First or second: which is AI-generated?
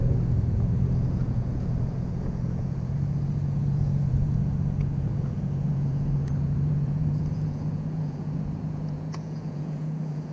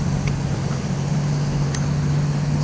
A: first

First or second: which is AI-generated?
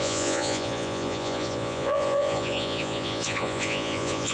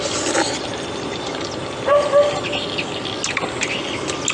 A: first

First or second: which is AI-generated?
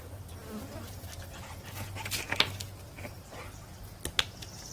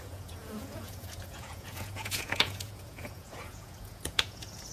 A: second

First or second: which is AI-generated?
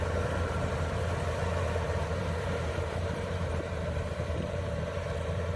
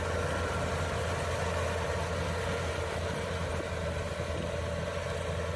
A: first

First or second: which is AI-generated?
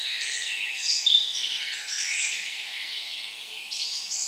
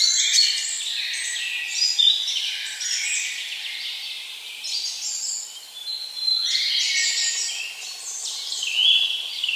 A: first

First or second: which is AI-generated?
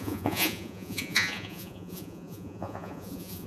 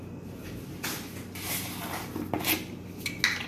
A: first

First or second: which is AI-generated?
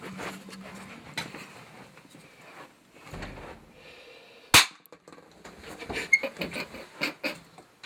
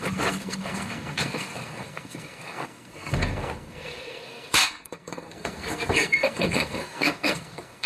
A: second